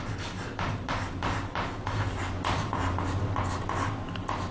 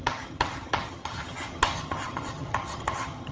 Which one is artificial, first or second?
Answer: second